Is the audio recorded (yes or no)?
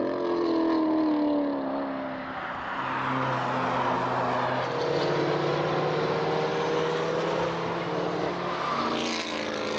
yes